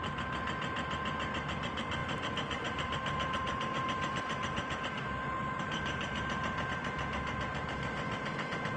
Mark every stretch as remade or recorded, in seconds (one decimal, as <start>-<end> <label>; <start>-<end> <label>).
0.0-2.0 recorded; 2.0-6.7 remade; 6.7-8.8 recorded